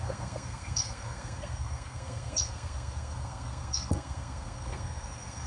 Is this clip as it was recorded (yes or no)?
no